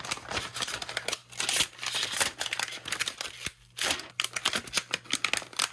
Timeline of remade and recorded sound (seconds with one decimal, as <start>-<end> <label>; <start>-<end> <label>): 0.0-5.7 recorded